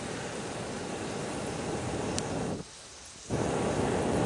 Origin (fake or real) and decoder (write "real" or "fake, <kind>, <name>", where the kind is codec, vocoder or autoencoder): real